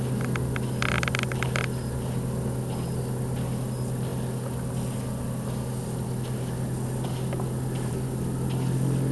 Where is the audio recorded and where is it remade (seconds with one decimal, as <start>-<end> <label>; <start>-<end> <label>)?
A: 0.0-9.1 recorded

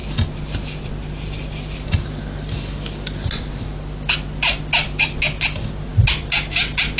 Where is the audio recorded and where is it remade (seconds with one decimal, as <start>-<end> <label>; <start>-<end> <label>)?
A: 0.0-7.0 recorded

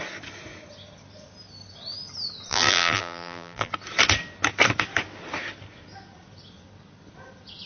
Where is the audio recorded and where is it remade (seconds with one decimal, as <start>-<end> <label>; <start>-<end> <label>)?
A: 0.0-2.5 recorded; 2.5-3.7 remade; 3.7-7.7 recorded

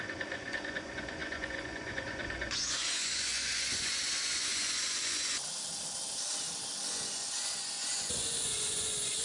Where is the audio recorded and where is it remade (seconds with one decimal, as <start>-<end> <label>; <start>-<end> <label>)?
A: 0.0-5.4 remade; 5.4-6.9 recorded; 6.9-9.2 remade

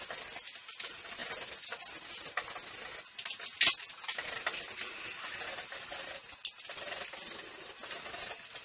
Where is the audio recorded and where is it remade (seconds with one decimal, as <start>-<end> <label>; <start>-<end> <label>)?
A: 0.0-8.6 recorded

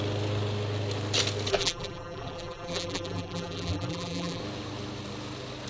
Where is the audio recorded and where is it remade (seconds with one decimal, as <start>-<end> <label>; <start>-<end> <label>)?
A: 0.0-1.5 recorded; 1.5-4.4 remade; 4.4-5.7 recorded

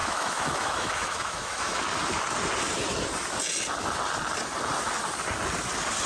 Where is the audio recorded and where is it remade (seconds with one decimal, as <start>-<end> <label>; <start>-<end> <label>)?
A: 0.0-1.8 remade; 1.8-6.1 recorded